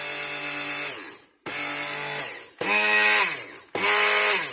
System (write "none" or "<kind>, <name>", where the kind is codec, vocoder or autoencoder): none